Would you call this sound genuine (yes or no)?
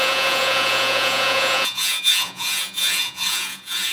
no